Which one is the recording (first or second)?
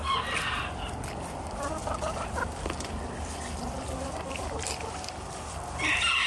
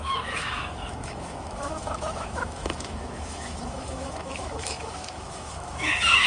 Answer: first